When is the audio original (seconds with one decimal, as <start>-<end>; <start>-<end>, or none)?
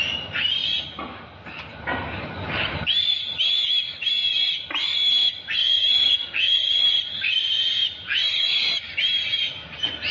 0.0-5.6; 6.8-10.1